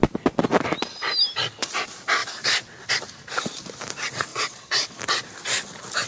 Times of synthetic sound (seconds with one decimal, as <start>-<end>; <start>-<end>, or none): 4.3-5.0